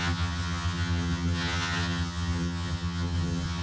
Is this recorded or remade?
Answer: remade